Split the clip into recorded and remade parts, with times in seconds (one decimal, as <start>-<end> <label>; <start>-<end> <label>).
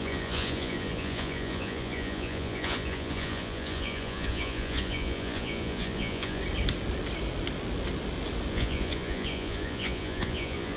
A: 0.0-6.4 remade; 6.4-8.5 recorded; 8.5-10.8 remade